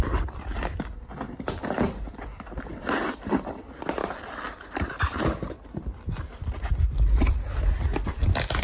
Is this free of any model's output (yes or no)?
no